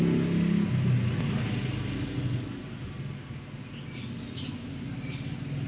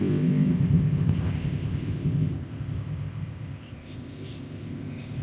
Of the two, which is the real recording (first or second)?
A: first